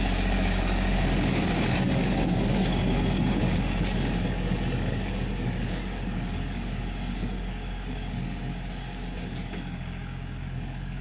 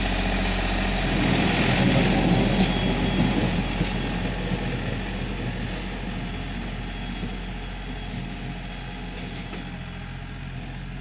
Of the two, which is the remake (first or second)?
first